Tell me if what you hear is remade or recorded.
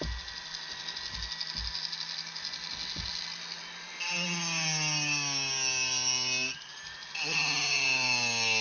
recorded